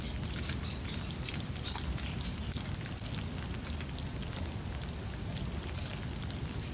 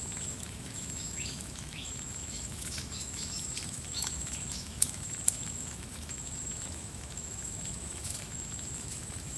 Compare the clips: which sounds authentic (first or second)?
first